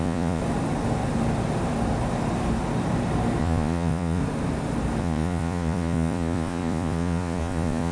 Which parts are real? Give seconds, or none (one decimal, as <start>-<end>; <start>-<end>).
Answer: 0.4-3.4; 4.2-5.0